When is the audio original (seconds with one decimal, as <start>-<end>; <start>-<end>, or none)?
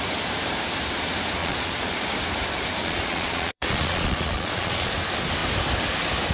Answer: 0.0-1.4; 2.0-2.8; 4.9-6.3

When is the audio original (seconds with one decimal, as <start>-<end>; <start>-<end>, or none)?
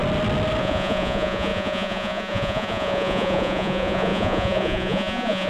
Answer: 0.0-0.6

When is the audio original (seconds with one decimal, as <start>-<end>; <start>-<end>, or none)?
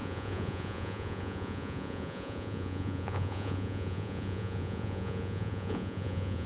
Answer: none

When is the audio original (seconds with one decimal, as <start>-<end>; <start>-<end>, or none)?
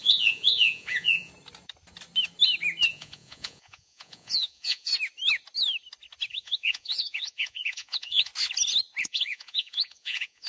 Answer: 1.3-2.9; 4.9-6.3; 8.3-9.0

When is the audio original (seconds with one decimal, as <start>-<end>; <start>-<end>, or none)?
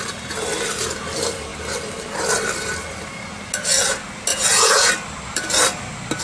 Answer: 0.0-4.3; 4.9-6.2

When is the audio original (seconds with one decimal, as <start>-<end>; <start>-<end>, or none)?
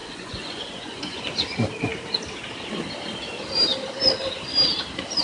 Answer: 1.2-5.2